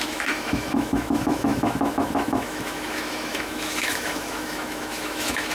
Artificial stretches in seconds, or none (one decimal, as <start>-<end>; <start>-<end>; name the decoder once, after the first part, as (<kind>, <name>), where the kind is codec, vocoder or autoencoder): 0.0-5.5 (autoencoder, DAC-VAE)